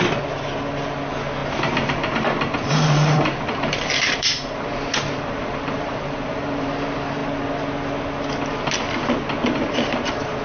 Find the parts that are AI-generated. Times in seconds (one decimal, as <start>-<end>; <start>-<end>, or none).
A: 1.4-6.7; 9.4-10.4